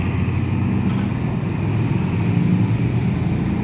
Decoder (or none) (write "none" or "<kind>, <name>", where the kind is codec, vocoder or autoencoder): none